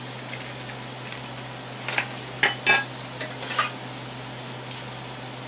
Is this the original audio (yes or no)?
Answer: yes